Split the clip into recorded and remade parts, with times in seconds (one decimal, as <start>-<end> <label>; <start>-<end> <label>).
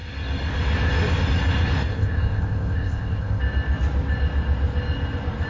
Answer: 0.0-1.9 recorded; 1.9-3.4 remade; 3.4-5.5 recorded